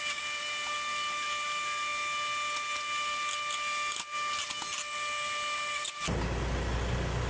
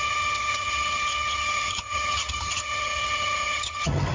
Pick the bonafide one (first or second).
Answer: first